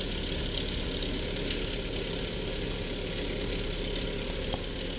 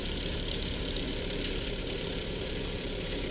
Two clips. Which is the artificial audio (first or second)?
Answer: second